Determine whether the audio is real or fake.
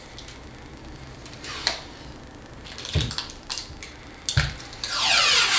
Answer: real